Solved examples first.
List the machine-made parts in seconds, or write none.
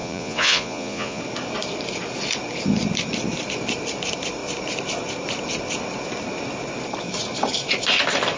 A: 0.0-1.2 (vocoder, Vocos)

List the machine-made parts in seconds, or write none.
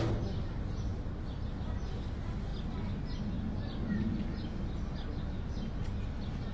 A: none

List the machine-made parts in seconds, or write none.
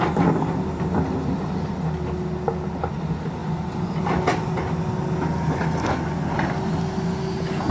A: none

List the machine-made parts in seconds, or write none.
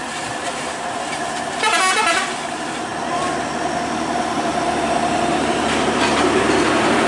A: 0.0-2.9 (vocoder, BigVGAN v2); 4.2-7.1